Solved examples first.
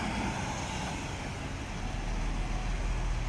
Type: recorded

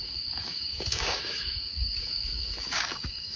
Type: remade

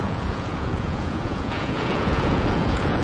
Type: remade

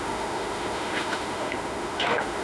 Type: remade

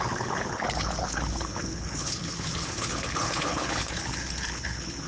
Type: remade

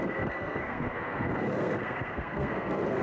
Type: remade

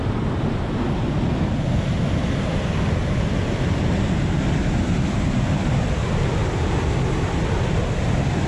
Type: recorded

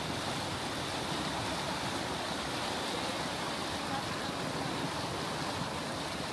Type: recorded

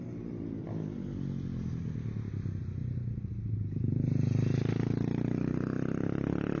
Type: recorded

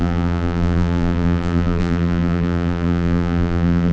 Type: remade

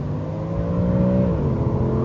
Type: recorded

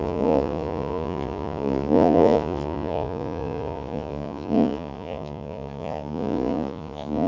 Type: remade